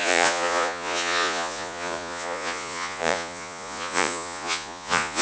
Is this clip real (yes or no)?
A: no